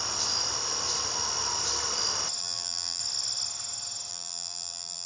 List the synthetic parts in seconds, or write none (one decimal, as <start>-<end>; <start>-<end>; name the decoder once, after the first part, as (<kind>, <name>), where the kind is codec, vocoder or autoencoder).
2.4-3.0 (vocoder, BigVGAN v2); 4.1-5.1